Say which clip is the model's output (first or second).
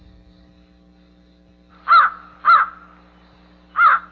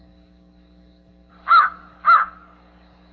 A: second